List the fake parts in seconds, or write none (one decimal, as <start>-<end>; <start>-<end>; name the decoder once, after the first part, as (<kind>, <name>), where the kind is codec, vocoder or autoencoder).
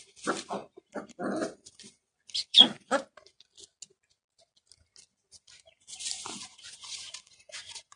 2.5-3.0 (vocoder, Vocos); 6.5-8.0